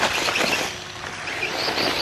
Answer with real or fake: real